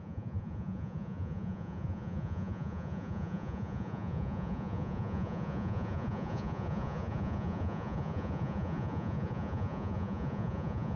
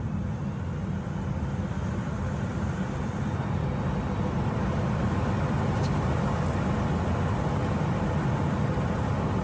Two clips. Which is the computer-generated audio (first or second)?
first